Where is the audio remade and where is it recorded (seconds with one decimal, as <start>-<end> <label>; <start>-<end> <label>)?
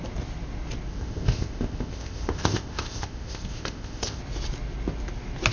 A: 0.0-0.9 recorded; 0.9-4.2 remade; 4.2-5.5 recorded